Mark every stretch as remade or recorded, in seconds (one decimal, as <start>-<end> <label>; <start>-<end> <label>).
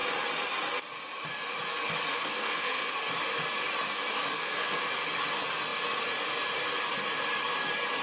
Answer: 0.0-2.1 recorded; 2.1-2.9 remade; 2.9-4.3 recorded; 4.3-4.8 remade; 4.8-8.0 recorded